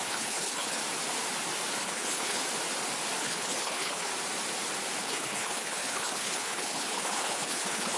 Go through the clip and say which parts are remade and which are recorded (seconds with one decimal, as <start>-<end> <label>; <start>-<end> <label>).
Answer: 0.0-0.8 remade; 0.8-1.8 recorded; 1.8-2.4 remade; 2.4-3.2 recorded; 3.2-4.1 remade; 4.1-5.0 recorded; 5.0-8.0 remade